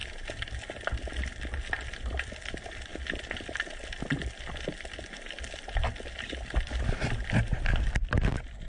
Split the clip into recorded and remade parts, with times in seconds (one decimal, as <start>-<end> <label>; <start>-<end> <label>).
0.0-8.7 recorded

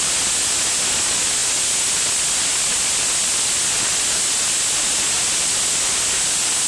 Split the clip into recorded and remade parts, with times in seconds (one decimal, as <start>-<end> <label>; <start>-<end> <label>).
0.0-6.7 recorded

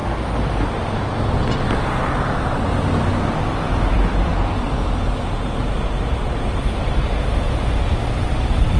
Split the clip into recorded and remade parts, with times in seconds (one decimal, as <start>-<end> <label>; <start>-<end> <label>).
0.0-2.1 recorded; 2.1-4.3 remade; 4.3-5.0 recorded; 5.0-5.6 remade; 5.6-8.8 recorded

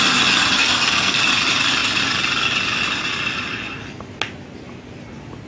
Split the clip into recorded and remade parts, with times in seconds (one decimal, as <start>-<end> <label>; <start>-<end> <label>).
0.0-0.6 recorded; 0.6-1.2 remade; 1.2-5.5 recorded

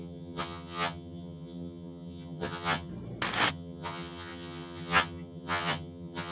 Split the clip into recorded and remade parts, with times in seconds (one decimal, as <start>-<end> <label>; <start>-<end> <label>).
0.0-2.9 remade; 2.9-3.5 recorded; 3.5-6.3 remade